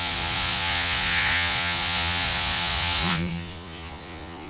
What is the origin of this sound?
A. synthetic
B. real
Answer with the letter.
A